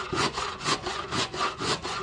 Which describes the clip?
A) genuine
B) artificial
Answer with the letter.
B